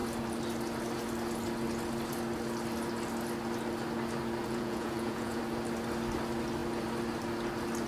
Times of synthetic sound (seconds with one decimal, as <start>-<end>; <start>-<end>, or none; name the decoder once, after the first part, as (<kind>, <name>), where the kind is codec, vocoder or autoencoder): 4.4-5.4 (vocoder, Vocos)